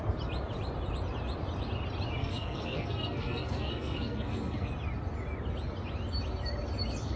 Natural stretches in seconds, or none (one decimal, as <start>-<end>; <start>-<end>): 0.0-2.2; 4.7-7.2